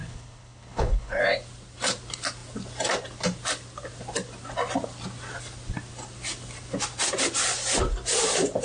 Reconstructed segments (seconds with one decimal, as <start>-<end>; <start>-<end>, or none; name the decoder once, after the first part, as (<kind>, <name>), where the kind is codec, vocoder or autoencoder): 0.0-1.2 (codec, HILCodec)